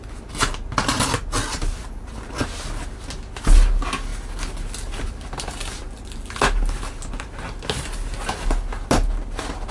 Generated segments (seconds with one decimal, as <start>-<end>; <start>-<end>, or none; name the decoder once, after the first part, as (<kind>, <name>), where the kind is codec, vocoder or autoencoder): none